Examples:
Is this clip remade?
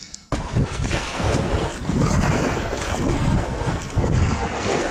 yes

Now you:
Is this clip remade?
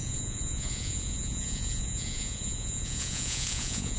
yes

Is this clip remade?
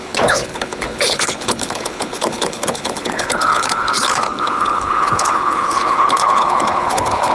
yes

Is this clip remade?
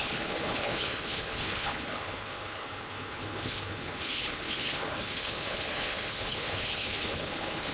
yes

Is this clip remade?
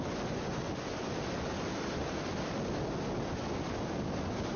no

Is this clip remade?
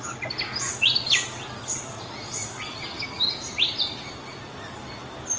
no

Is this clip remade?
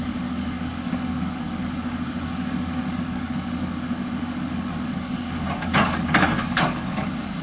yes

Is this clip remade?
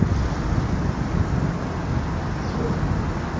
no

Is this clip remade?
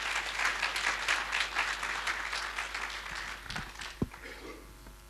no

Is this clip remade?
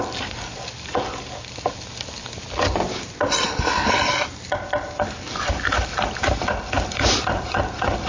no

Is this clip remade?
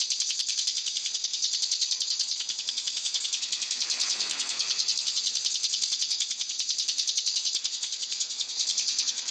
yes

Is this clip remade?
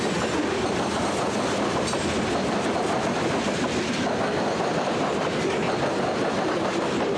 no